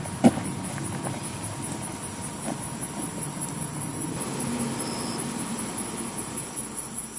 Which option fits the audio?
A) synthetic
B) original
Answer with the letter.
B